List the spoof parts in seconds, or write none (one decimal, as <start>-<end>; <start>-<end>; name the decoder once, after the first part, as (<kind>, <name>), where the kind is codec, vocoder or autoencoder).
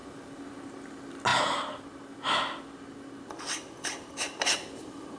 none